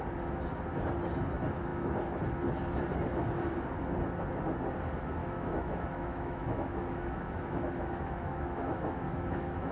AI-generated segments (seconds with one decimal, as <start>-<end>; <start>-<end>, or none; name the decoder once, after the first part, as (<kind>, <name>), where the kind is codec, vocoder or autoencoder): 5.2-9.7 (autoencoder, DAC-VAE)